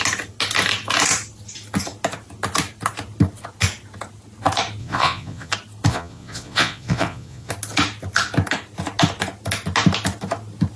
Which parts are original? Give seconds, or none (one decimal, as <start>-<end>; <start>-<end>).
0.0-4.8; 5.5-5.9; 7.5-10.8